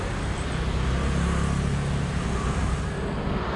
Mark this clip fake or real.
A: real